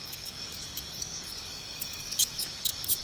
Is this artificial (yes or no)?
yes